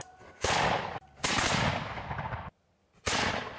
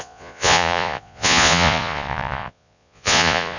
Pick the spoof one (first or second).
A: second